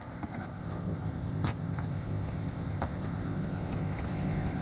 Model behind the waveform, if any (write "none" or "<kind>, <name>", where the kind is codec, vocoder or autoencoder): codec, ZipCodec